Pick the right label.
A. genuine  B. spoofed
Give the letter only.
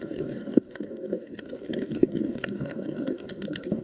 B